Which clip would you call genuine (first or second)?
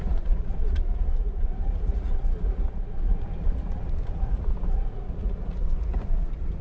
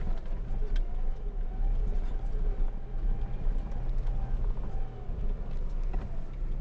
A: second